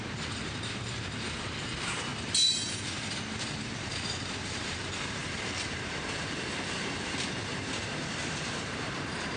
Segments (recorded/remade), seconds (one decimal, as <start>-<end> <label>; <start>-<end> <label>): 0.0-2.1 remade; 2.1-3.5 recorded; 3.5-9.4 remade